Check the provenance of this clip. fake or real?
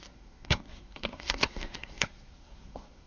fake